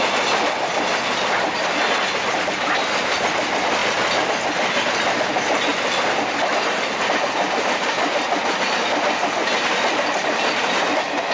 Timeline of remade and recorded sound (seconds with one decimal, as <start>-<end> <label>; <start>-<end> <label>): 0.0-3.8 recorded; 3.8-4.3 remade; 4.3-5.7 recorded; 5.7-8.4 remade; 8.4-11.3 recorded

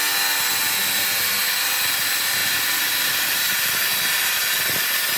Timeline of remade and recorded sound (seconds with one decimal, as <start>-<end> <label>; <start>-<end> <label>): 0.0-2.4 recorded; 2.4-4.5 remade; 4.5-5.2 recorded

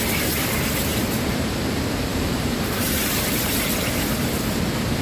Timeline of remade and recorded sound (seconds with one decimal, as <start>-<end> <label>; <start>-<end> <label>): 0.0-2.1 recorded; 2.1-3.4 remade; 3.4-5.0 recorded

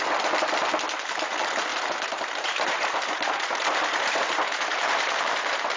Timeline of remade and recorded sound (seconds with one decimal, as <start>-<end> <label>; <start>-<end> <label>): 0.0-1.7 recorded; 1.7-5.2 remade; 5.2-5.8 recorded